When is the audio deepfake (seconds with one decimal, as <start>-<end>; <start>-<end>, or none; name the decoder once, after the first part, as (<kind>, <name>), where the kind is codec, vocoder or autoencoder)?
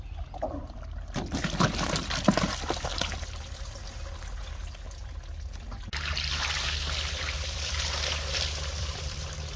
0.0-2.9 (vocoder, BigVGAN v2); 7.2-9.6